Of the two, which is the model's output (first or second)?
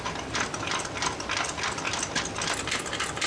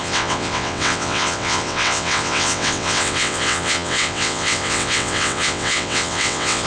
second